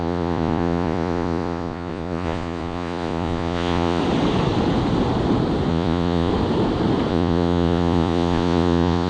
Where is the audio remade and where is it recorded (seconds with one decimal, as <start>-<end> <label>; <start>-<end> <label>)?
0.0-4.0 remade; 4.0-5.7 recorded; 5.7-6.3 remade; 6.3-7.1 recorded; 7.1-9.1 remade